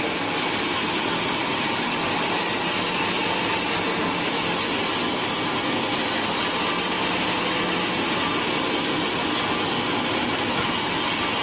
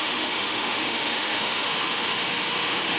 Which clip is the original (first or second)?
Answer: first